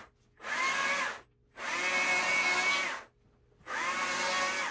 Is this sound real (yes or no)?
yes